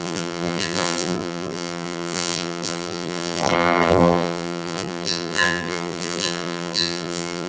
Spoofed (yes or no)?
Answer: yes